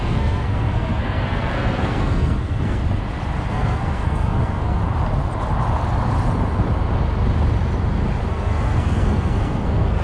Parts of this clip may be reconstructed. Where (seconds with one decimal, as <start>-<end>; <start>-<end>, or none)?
0.0-2.8; 3.5-4.8; 8.3-10.0